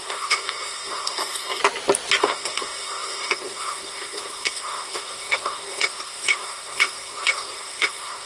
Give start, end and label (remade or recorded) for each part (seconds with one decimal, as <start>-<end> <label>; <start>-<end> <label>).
0.0-1.6 remade; 1.6-2.2 recorded; 2.2-8.3 remade